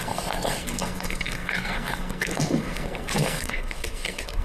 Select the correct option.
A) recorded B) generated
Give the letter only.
B